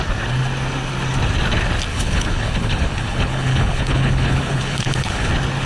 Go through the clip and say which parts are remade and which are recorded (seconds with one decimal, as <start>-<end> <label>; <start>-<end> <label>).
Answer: 0.0-1.9 recorded; 1.9-5.3 remade; 5.3-5.7 recorded